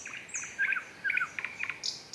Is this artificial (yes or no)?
no